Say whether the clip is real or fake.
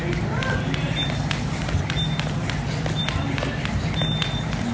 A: real